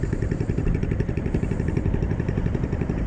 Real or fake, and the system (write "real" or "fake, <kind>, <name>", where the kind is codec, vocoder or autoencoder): fake, vocoder, BigVGAN v2